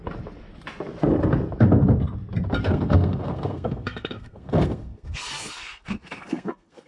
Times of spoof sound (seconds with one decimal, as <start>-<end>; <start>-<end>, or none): 2.6-6.9